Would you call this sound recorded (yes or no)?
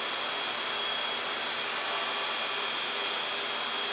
yes